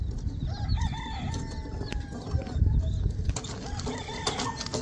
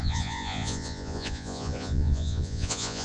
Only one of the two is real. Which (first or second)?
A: first